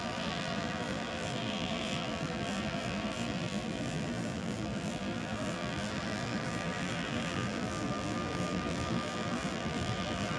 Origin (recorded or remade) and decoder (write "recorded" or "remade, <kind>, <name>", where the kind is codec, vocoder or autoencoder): remade, vocoder, BigVGAN v2